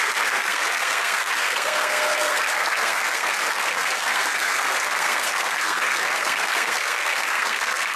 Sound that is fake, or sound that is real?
fake